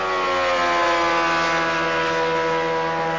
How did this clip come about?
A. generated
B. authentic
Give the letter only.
B